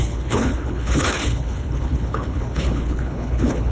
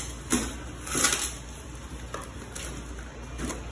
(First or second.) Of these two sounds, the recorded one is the second